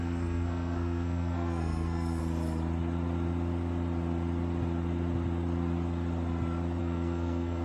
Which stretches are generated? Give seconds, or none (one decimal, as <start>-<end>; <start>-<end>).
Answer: 0.0-2.2; 6.8-7.6